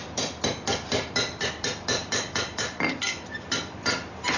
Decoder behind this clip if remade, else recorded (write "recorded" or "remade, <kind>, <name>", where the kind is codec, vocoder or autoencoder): recorded